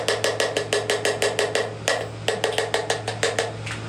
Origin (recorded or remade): recorded